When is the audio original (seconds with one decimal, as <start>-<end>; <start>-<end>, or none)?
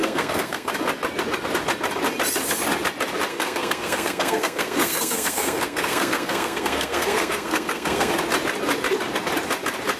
0.7-3.3; 8.1-10.0